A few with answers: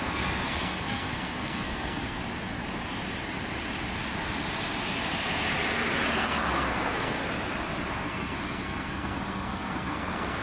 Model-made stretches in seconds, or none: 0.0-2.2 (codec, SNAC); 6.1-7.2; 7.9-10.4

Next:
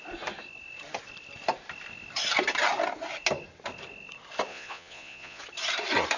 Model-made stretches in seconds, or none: 4.5-5.4 (vocoder, Vocos)

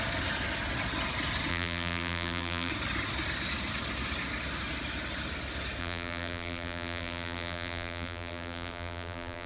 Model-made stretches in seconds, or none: 1.5-2.7 (vocoder, BigVGAN v2); 5.8-9.5

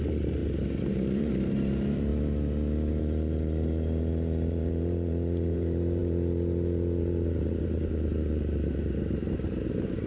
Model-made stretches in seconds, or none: 0.0-0.4 (vocoder, BigVGAN v2); 0.9-2.1; 3.0-10.1

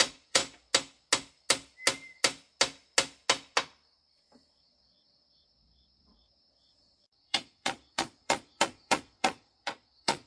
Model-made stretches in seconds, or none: 0.0-0.4 (vocoder, Vocos); 4.6-10.3

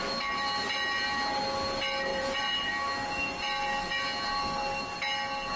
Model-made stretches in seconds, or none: 2.1-2.7 (vocoder, Vocos)

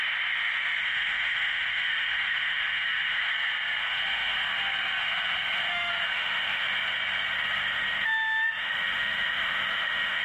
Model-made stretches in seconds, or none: 0.8-3.3 (autoencoder, DAC-VAE); 3.8-4.5; 5.0-6.6; 8.6-10.2

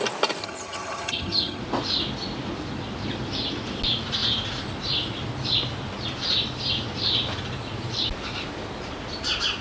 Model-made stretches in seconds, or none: 0.4-1.6 (vocoder, HiFi-GAN)